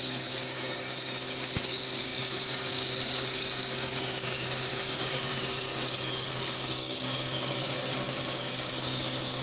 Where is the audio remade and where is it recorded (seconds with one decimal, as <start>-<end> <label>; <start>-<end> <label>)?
0.0-9.4 remade

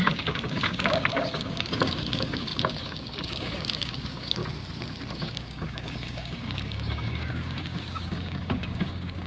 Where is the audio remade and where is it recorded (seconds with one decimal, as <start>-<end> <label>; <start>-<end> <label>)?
0.0-4.4 remade; 4.4-5.1 recorded; 5.1-9.3 remade